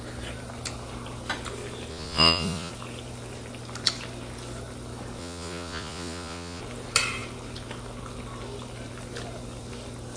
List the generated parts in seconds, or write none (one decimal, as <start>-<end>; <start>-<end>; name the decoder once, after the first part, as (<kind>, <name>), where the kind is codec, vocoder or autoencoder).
1.9-2.7 (vocoder, Vocos); 5.2-6.6